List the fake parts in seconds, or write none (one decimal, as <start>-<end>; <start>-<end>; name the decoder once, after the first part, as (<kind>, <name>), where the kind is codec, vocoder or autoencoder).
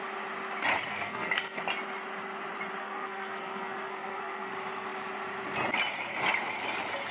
0.9-1.6 (codec, SNAC); 2.8-4.5